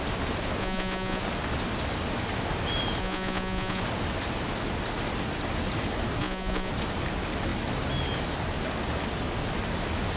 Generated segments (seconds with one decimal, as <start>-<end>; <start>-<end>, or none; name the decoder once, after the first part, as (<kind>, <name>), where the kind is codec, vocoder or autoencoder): 0.6-1.2 (vocoder, Vocos); 3.0-3.8; 6.2-6.7